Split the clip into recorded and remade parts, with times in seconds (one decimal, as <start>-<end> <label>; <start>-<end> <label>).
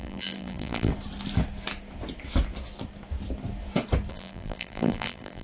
0.0-0.9 remade; 0.9-4.1 recorded; 4.1-5.4 remade